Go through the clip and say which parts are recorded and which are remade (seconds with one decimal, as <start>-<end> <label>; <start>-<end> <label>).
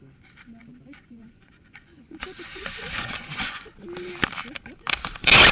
0.0-0.6 recorded; 0.6-3.7 remade; 3.7-5.5 recorded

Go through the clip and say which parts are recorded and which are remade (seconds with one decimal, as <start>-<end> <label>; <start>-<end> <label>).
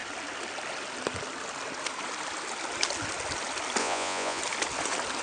0.0-3.8 recorded; 3.8-4.4 remade; 4.4-5.2 recorded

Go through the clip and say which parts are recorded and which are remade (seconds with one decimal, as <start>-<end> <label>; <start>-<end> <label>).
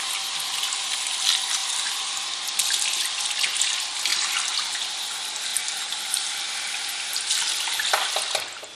0.0-8.7 recorded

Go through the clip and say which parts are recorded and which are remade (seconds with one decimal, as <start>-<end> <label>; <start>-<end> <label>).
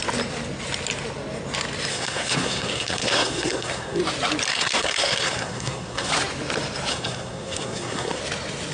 0.0-1.9 recorded; 1.9-4.0 remade; 4.0-4.5 recorded; 4.5-6.1 remade; 6.1-6.9 recorded; 6.9-8.2 remade; 8.2-8.7 recorded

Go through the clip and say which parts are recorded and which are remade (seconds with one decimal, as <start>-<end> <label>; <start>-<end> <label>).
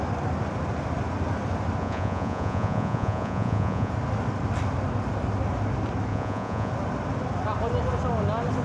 0.0-1.8 recorded; 1.8-3.9 remade; 3.9-6.1 recorded; 6.1-6.7 remade; 6.7-8.6 recorded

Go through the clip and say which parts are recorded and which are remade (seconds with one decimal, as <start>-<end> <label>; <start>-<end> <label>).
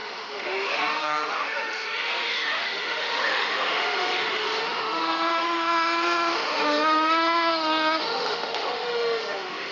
0.0-9.7 remade